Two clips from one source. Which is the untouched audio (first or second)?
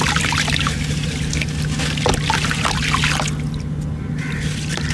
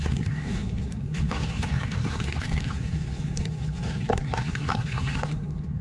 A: first